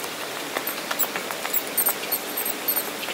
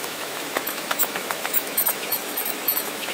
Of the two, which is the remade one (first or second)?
second